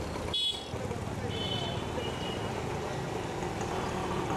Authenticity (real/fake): real